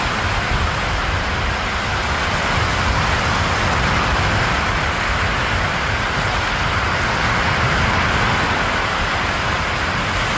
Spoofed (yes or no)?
no